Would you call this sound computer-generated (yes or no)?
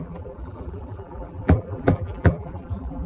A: yes